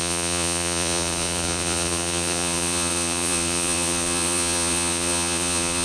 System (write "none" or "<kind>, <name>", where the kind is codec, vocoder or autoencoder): vocoder, Vocos